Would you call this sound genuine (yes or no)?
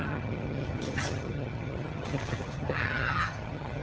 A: no